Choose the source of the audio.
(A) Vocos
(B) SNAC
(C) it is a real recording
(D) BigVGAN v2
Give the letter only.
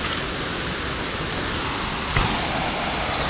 C